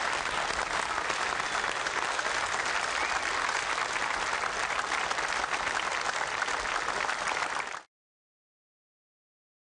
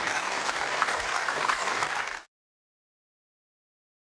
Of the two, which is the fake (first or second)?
second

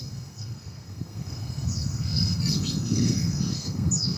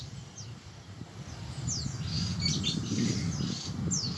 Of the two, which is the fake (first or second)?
first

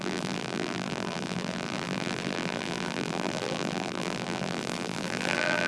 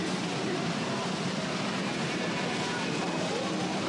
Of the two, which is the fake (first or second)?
first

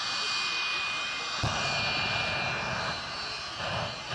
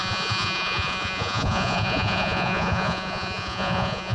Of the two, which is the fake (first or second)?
second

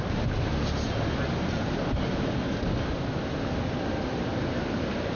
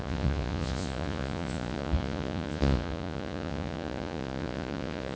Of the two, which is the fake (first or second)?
second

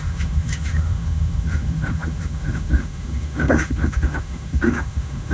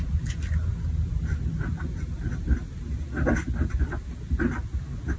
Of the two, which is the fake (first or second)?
first